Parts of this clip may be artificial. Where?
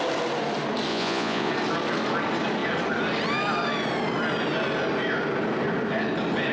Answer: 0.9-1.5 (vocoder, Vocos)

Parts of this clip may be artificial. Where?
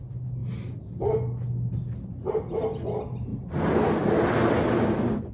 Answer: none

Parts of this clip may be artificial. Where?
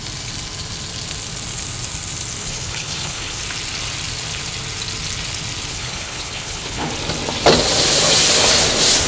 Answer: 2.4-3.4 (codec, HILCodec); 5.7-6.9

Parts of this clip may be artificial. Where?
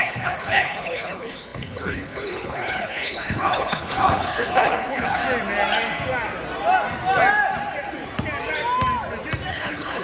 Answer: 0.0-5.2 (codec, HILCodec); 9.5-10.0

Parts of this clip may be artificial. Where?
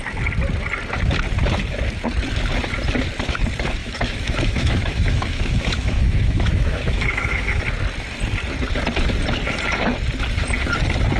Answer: 3.8-7.6 (autoencoder, DAC-VAE)